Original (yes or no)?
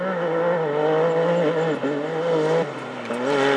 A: yes